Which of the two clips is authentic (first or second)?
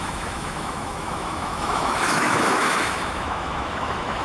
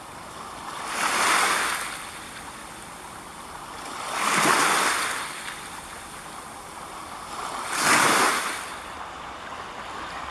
second